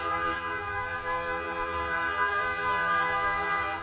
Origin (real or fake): fake